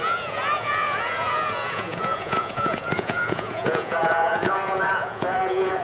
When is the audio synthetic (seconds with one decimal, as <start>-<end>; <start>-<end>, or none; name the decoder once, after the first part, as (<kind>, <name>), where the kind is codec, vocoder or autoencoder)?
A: 0.0-5.8 (vocoder, Vocos)